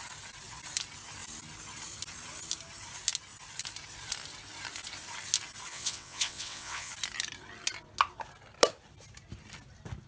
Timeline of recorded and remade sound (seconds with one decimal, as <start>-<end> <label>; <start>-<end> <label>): 0.0-5.7 recorded; 5.7-6.9 remade; 6.9-10.1 recorded